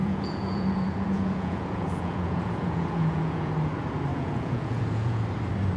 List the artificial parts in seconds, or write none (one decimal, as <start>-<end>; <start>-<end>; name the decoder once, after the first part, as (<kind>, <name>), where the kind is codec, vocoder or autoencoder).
0.0-3.5 (vocoder, Vocos); 4.1-5.2